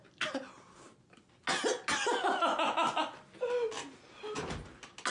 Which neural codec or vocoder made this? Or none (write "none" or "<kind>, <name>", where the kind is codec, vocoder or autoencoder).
none